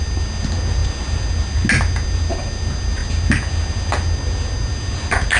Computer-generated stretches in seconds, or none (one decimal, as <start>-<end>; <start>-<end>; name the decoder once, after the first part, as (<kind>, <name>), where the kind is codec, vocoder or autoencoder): none